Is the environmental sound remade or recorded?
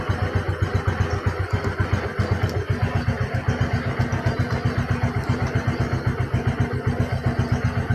recorded